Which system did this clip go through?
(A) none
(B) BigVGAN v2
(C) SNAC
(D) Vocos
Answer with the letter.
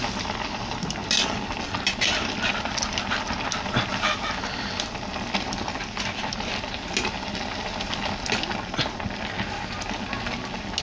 A